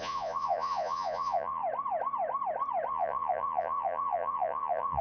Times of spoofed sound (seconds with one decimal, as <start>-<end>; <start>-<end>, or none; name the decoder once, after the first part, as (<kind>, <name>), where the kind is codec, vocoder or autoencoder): 0.0-1.6 (vocoder, Vocos); 2.9-5.0